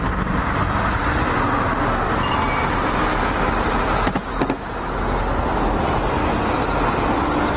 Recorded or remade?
recorded